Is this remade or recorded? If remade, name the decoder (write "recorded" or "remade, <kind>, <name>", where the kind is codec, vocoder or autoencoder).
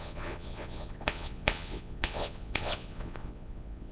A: remade, vocoder, Vocos